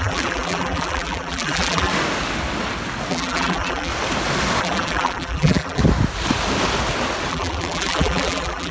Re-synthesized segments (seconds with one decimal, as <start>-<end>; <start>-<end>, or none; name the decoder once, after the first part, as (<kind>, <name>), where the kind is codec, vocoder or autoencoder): 0.0-1.9 (vocoder, BigVGAN v2); 3.1-3.9; 4.6-5.8; 7.3-8.7